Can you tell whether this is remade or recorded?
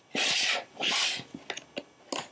recorded